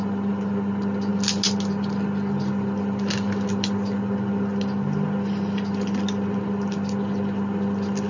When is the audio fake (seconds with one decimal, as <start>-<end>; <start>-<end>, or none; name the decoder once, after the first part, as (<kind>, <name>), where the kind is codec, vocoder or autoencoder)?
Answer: none